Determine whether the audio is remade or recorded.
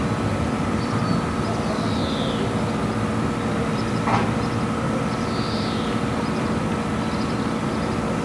recorded